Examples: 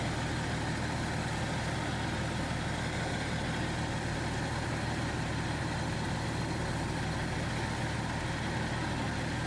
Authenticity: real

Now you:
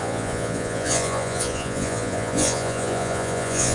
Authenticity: fake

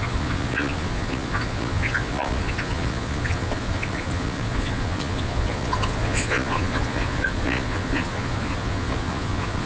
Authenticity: fake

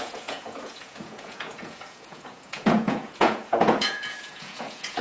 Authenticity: fake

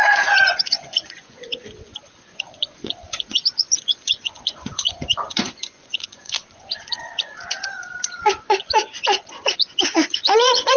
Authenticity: fake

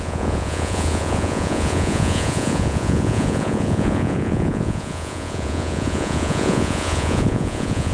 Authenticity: fake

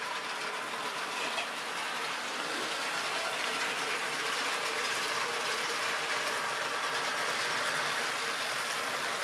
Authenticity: real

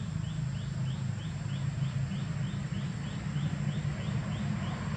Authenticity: real